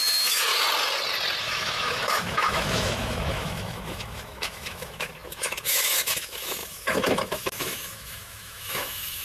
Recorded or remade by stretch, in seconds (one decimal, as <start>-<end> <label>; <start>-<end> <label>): 0.0-0.5 remade; 0.5-1.4 recorded; 1.4-9.2 remade